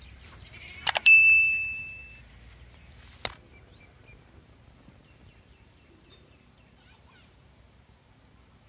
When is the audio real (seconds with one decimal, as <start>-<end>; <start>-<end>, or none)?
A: 2.0-5.6